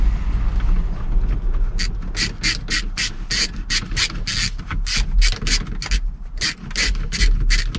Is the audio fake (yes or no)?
no